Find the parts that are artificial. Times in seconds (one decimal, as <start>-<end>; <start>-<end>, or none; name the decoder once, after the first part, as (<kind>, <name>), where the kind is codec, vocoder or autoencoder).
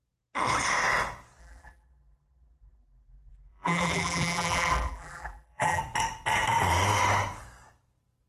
1.4-5.8 (vocoder, BigVGAN v2)